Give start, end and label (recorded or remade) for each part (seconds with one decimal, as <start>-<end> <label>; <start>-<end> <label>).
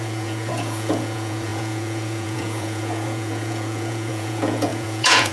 0.0-5.3 remade